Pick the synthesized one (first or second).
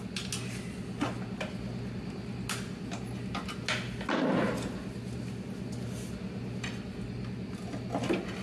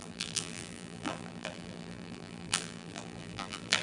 second